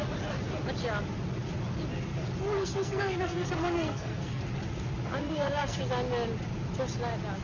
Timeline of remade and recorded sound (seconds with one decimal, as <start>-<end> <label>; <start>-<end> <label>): 0.0-2.6 recorded; 2.6-4.4 remade; 4.4-5.2 recorded; 5.2-5.8 remade; 5.8-7.4 recorded